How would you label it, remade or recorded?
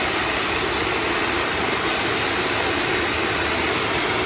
recorded